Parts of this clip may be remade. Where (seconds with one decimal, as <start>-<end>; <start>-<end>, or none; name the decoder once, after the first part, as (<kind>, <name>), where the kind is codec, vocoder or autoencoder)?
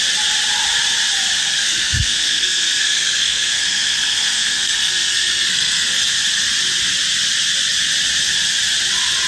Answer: 1.4-6.1 (codec, SNAC)